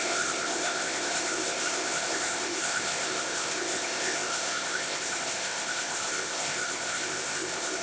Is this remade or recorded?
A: remade